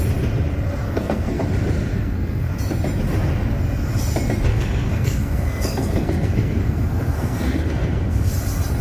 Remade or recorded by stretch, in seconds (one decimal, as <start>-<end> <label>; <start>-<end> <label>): 0.0-0.8 recorded; 0.8-1.4 remade; 1.4-1.9 recorded; 1.9-2.5 remade; 2.5-4.5 recorded; 4.5-8.3 remade; 8.3-8.8 recorded